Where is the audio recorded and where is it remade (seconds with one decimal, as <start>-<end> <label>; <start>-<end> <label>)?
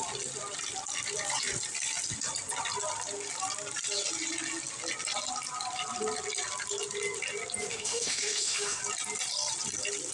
0.0-7.7 recorded; 7.7-8.8 remade; 8.8-10.1 recorded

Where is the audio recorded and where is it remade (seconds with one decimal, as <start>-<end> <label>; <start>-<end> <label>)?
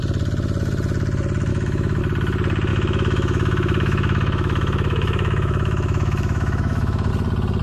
0.0-1.5 recorded; 1.5-2.0 remade; 2.0-2.7 recorded; 2.7-7.1 remade; 7.1-7.6 recorded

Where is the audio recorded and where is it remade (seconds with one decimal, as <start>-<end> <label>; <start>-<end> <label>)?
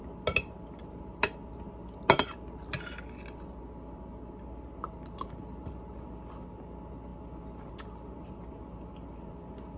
0.0-9.8 recorded